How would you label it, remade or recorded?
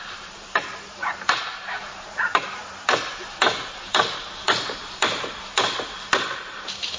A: remade